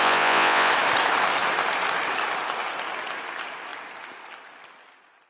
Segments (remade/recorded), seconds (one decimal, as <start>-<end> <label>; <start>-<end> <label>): 0.0-0.7 remade; 0.7-5.3 recorded